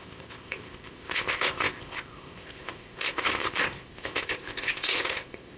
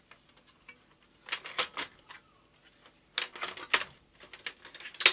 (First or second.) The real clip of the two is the second